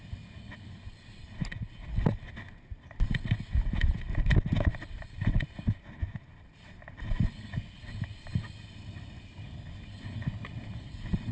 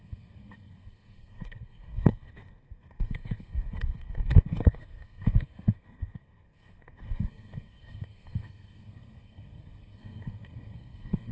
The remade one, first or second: second